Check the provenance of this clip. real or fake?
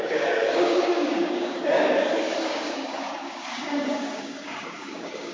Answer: fake